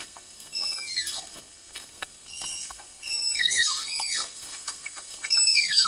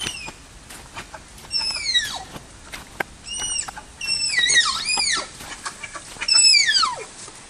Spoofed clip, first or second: first